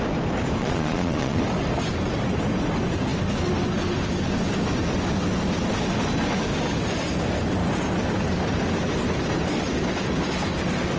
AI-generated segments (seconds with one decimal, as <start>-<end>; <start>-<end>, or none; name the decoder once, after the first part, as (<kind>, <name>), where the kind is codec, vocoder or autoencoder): 0.6-1.4 (vocoder, Vocos)